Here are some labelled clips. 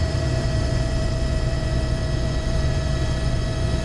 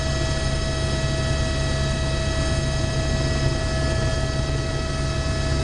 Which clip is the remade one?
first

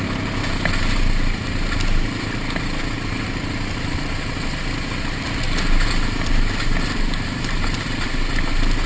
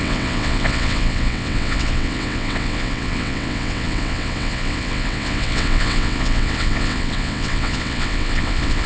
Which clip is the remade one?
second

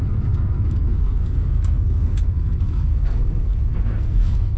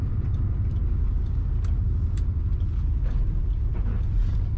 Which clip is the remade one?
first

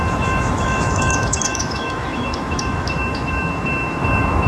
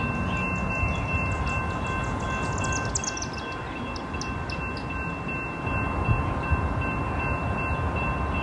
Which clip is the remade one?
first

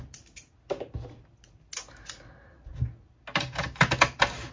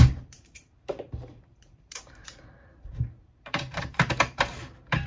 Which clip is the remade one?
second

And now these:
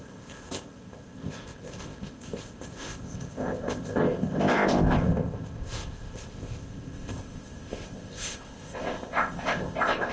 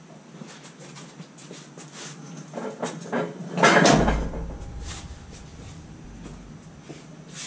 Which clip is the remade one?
first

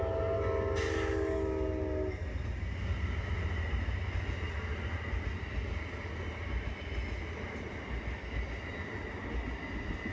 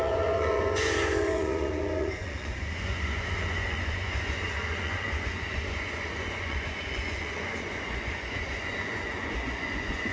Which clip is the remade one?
second